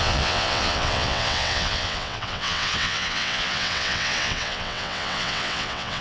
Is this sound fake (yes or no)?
yes